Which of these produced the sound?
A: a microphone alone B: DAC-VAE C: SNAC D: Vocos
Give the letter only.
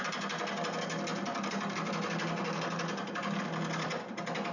A